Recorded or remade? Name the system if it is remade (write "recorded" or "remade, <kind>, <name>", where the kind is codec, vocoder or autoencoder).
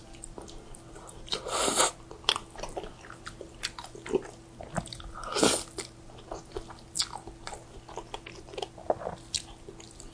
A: recorded